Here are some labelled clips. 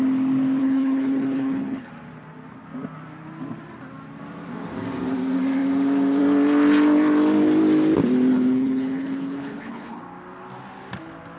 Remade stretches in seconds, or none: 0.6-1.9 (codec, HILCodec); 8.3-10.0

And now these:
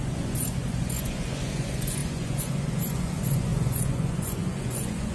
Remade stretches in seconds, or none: 0.0-5.1 (vocoder, Vocos)

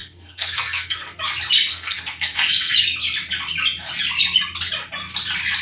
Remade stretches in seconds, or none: 0.0-1.2 (codec, SNAC); 1.7-2.7

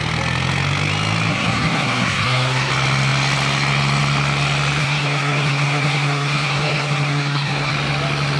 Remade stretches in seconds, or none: 1.3-2.7 (codec, SNAC); 4.8-7.7

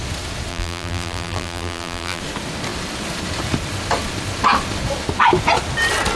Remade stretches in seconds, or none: 0.5-2.2 (vocoder, BigVGAN v2)